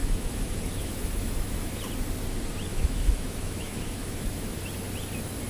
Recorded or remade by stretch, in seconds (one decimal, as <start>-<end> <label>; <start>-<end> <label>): 0.0-1.8 remade; 1.8-2.7 recorded; 2.7-4.6 remade; 4.6-5.5 recorded